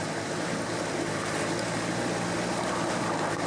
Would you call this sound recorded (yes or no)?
yes